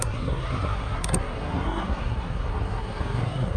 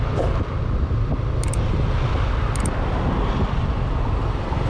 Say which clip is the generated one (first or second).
first